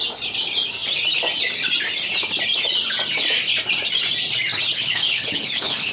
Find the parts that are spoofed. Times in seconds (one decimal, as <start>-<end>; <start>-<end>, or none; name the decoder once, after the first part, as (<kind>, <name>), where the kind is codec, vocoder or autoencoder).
4.8-5.9 (codec, HILCodec)